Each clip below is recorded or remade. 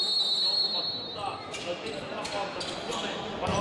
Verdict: remade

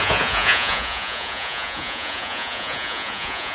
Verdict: remade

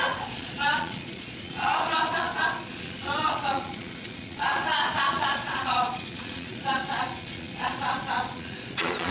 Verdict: remade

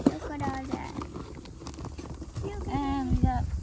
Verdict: recorded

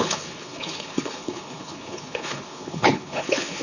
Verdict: remade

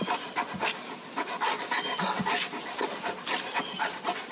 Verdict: recorded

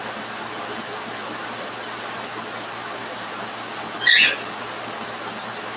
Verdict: recorded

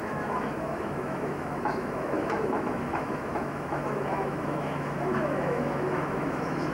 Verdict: remade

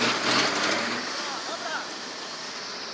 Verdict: recorded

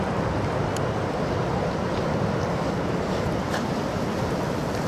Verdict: recorded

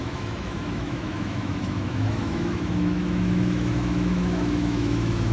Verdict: remade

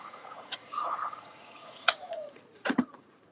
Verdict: remade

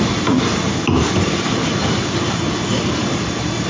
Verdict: recorded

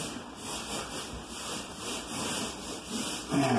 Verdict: remade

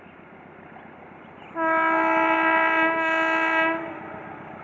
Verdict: recorded